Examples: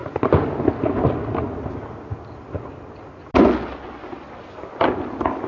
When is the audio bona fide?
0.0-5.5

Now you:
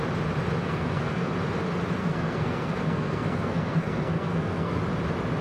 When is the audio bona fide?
0.0-0.6; 1.3-2.0; 4.8-5.4

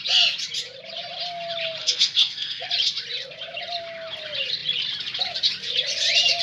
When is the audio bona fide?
0.0-1.8; 2.7-6.4

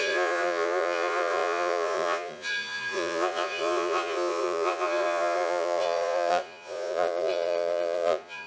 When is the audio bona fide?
none

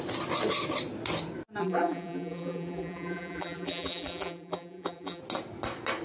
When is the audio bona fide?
0.0-1.6; 5.2-6.0

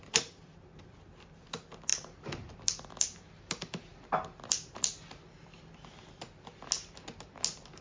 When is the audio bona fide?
0.0-7.8

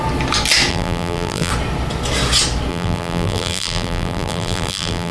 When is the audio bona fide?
0.0-0.7; 1.5-2.7

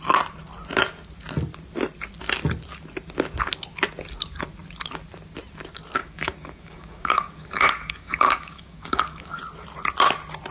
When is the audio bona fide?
0.0-6.0; 9.4-10.5